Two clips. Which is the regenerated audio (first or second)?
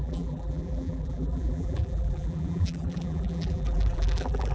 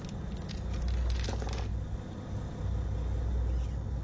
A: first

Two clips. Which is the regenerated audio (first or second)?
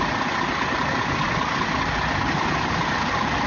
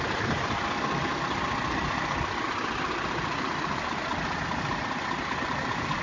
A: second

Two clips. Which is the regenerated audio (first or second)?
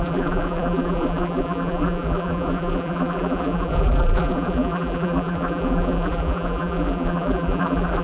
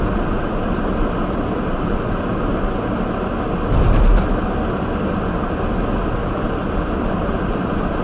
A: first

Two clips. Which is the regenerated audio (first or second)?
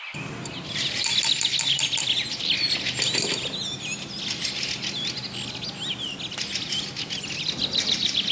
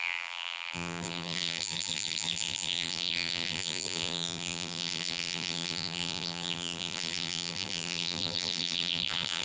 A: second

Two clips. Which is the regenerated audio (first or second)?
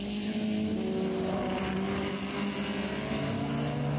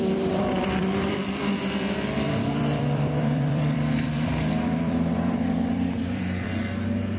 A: second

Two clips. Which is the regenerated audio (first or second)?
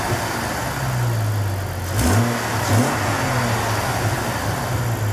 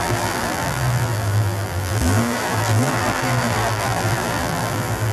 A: second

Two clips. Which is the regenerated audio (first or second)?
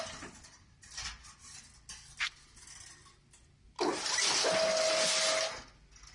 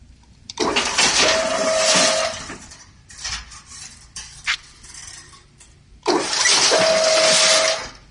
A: second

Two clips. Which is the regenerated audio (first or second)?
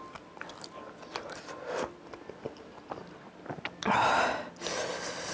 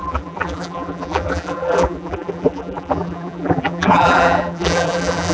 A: second